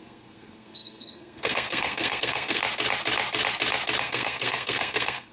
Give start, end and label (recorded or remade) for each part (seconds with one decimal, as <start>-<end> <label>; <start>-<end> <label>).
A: 0.0-2.6 remade; 2.6-4.0 recorded; 4.0-5.3 remade